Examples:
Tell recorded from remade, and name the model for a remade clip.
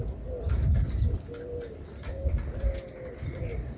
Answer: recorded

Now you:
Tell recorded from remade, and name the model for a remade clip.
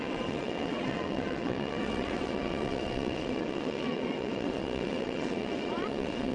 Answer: remade, vocoder, WaveNeXt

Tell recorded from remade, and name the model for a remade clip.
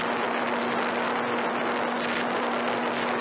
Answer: recorded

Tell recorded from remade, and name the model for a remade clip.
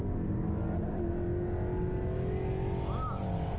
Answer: recorded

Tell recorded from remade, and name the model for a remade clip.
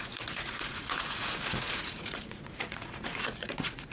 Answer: remade, vocoder, Vocos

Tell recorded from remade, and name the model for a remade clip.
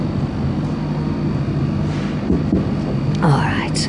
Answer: recorded